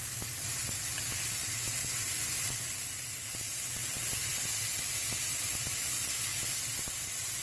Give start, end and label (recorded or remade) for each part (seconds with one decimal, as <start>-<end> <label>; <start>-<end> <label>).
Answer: 0.0-3.8 recorded; 3.8-4.7 remade; 4.7-7.4 recorded